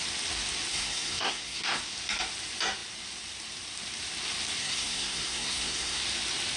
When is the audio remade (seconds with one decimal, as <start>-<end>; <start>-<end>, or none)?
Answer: 0.7-1.8; 4.6-6.0